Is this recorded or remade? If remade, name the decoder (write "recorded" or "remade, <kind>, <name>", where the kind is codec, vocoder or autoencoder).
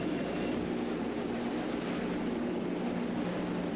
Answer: recorded